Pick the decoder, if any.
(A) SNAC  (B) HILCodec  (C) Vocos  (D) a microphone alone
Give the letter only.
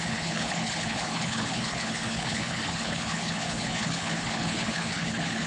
B